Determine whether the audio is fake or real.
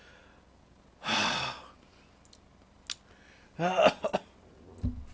real